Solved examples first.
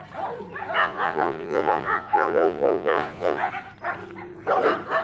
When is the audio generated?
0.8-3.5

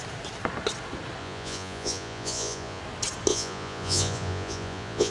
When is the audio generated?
1.2-2.8; 3.3-5.1

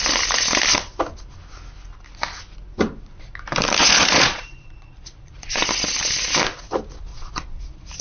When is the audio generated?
3.8-5.7; 7.1-7.6

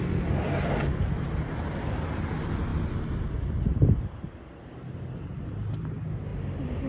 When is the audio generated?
none

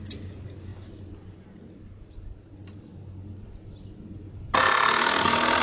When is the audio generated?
none

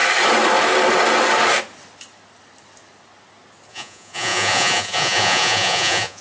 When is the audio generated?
3.7-6.2